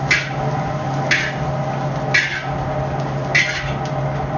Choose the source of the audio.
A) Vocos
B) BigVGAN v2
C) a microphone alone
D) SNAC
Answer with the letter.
C